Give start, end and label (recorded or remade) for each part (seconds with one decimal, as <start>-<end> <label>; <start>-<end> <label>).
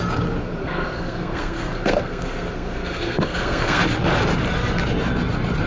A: 0.0-0.4 recorded; 0.4-3.8 remade; 3.8-5.7 recorded